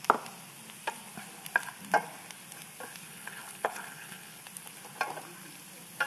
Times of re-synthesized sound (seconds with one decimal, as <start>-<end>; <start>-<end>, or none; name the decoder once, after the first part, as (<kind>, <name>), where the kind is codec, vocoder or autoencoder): 3.1-4.4 (codec, HILCodec)